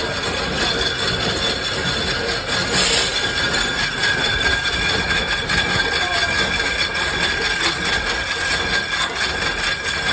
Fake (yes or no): no